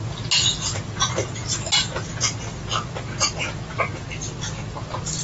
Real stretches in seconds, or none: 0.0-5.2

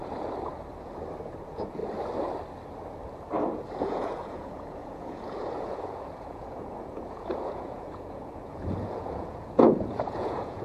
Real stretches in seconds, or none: 0.0-1.4; 1.8-3.8

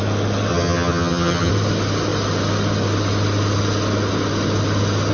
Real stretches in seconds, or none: 0.0-0.5; 1.5-5.1

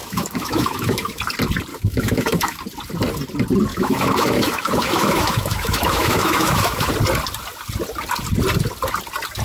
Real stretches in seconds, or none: 1.2-1.7; 2.6-3.7; 6.9-9.4

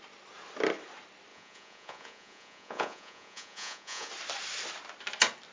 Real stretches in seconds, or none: 0.0-1.3; 4.1-5.5